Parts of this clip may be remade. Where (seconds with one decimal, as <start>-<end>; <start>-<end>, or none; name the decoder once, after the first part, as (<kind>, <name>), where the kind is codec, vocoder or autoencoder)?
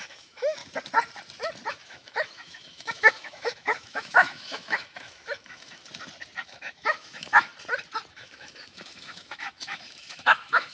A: 0.0-0.6 (autoencoder, DAC-VAE); 1.7-5.8; 6.4-7.5; 8.1-10.7